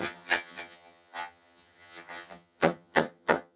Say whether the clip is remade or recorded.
remade